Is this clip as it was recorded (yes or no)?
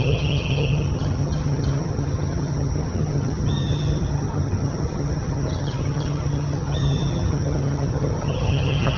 no